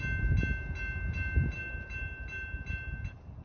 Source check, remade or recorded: recorded